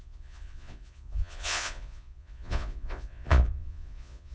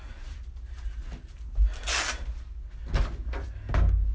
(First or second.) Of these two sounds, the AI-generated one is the first